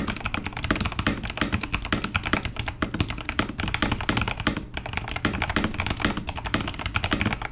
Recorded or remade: recorded